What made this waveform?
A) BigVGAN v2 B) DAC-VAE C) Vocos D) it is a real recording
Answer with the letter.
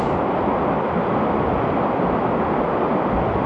D